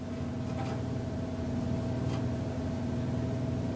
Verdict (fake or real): real